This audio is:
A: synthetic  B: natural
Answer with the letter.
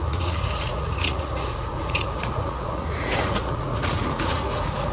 A